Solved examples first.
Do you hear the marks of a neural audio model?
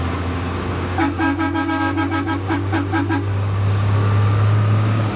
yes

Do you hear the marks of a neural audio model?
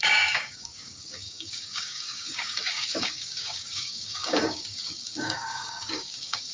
yes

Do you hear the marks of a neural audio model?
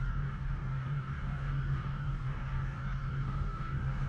yes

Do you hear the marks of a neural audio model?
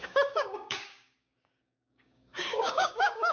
yes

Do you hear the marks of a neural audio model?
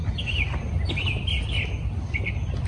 no